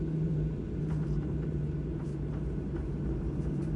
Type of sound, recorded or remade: remade